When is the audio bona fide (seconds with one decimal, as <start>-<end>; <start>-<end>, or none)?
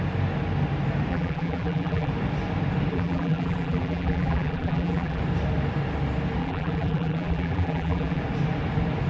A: 0.0-1.1; 2.1-2.9; 5.2-6.4; 8.2-9.1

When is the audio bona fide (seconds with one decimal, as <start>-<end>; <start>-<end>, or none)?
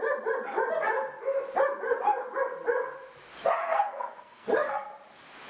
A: 0.0-3.6; 4.9-5.5